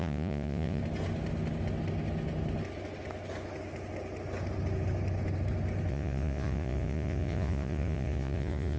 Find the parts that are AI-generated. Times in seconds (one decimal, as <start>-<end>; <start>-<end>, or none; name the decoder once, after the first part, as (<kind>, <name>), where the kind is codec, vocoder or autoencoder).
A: 0.0-0.8 (vocoder, Vocos); 5.9-8.8